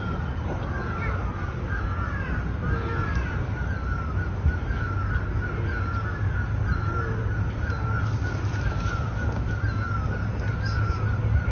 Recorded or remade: recorded